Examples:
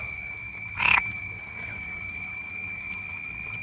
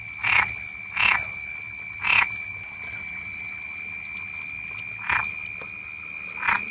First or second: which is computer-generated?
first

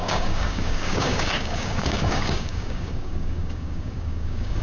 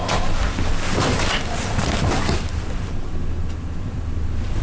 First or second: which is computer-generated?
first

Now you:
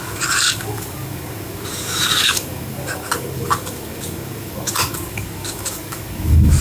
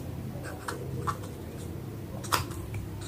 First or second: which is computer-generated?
first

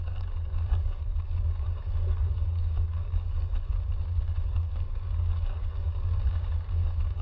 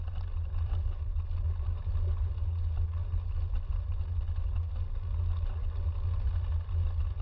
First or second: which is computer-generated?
first